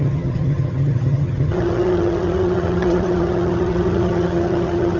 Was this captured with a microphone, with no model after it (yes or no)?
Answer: no